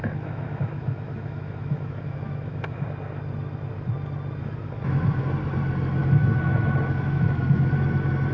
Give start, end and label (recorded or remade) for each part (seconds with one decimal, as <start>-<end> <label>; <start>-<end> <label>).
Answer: 0.0-2.9 remade; 2.9-4.4 recorded; 4.4-5.2 remade; 5.2-6.0 recorded; 6.0-7.7 remade; 7.7-8.3 recorded